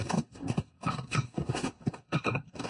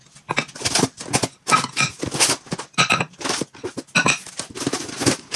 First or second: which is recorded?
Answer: second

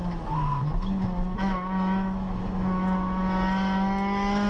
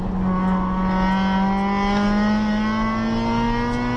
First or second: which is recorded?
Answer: second